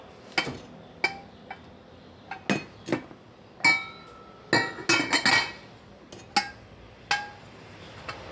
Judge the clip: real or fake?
real